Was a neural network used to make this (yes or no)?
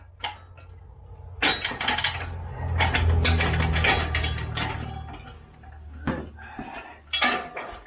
no